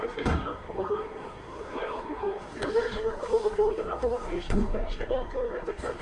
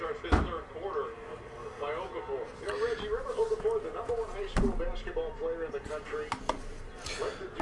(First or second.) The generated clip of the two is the first